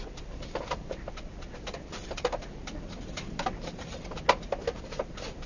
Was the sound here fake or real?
real